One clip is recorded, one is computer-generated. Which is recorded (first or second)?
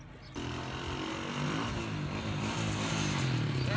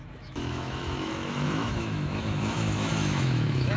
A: first